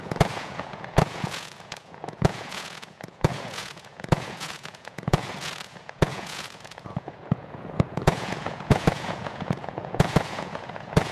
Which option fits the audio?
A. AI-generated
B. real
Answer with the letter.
A